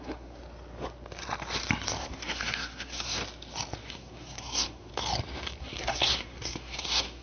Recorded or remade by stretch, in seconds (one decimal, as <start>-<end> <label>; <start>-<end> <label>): 0.0-0.4 remade; 0.4-2.0 recorded; 2.0-3.2 remade; 3.2-3.9 recorded; 3.9-4.9 remade; 4.9-5.6 recorded; 5.6-7.2 remade